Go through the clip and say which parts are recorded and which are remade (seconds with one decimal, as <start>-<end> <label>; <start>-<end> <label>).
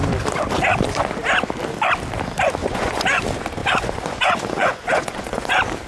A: 0.0-2.6 recorded; 2.6-3.2 remade; 3.2-3.6 recorded; 3.6-5.5 remade; 5.5-5.9 recorded